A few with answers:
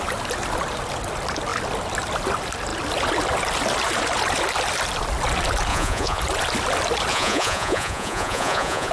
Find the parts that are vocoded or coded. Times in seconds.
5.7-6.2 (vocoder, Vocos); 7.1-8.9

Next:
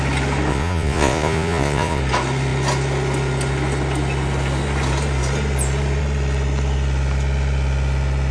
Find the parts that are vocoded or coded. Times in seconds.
0.5-2.0 (vocoder, Vocos)

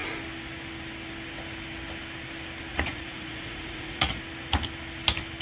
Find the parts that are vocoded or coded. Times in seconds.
2.7-4.2 (vocoder, Vocos)

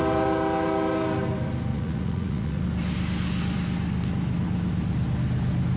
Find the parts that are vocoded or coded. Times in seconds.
1.7-2.6 (vocoder, Vocos)

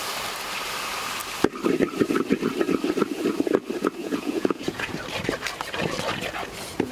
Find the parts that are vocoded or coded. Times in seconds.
4.0-4.9 (vocoder, Vocos)

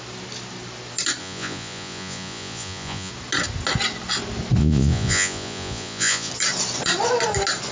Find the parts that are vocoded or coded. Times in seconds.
1.2-3.1 (vocoder, Vocos); 4.6-6.3

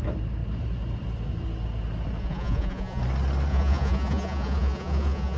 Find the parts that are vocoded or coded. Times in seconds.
2.2-3.0 (vocoder, Vocos); 3.5-5.4

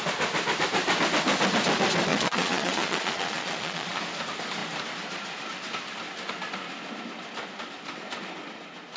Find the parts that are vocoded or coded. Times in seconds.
2.1-4.0 (vocoder, Vocos)